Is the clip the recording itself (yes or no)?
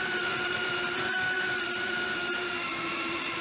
no